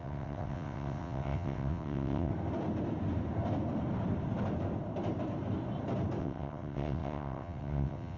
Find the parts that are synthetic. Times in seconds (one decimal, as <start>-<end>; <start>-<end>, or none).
0.0-2.3; 6.2-8.2